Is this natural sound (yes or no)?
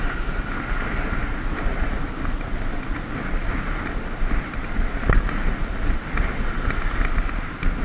yes